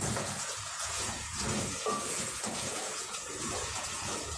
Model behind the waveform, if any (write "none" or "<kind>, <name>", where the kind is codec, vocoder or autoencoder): vocoder, Vocos